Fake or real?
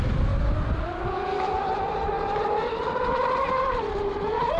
real